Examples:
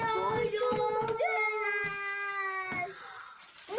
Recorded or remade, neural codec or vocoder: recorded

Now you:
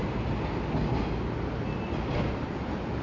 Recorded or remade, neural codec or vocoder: recorded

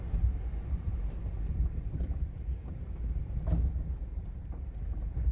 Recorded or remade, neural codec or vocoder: remade, vocoder, BigVGAN v2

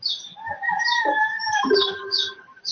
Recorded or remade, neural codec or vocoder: remade, vocoder, BigVGAN v2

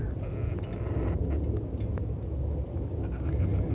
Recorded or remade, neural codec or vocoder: recorded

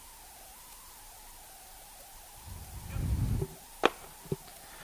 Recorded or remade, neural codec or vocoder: recorded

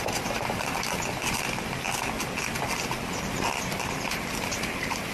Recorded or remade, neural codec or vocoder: remade, vocoder, BigVGAN v2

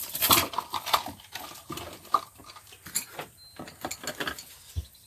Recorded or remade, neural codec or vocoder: recorded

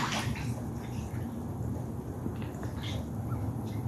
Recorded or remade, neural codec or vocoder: recorded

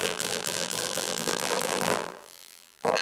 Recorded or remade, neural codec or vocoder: remade, vocoder, BigVGAN v2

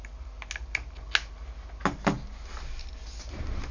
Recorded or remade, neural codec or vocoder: recorded